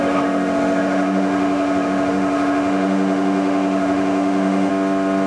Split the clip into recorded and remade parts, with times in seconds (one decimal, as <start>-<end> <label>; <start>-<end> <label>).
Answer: 0.0-4.7 remade; 4.7-5.3 recorded